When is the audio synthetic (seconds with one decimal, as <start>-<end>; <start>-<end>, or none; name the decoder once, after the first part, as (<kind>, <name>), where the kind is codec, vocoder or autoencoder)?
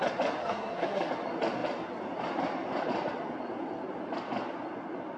0.4-1.1 (codec, SNAC)